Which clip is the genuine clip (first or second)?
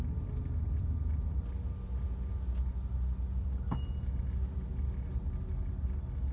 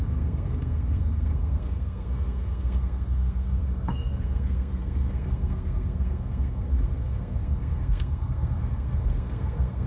first